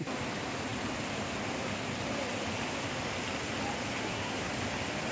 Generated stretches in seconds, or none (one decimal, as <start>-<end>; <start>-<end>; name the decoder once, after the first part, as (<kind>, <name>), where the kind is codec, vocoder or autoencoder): 4.0-4.5 (codec, SNAC)